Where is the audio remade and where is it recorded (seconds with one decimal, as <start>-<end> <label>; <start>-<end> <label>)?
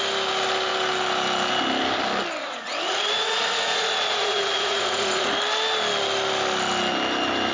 0.0-2.4 recorded; 2.4-5.3 remade; 5.3-7.5 recorded